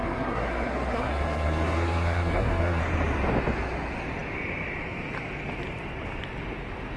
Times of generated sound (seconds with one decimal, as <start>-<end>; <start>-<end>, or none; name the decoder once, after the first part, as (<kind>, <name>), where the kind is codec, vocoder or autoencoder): 0.0-2.8 (codec, SNAC)